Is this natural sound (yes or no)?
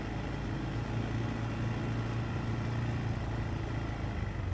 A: yes